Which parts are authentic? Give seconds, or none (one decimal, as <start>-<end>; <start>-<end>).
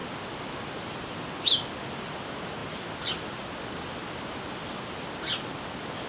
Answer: 0.0-6.1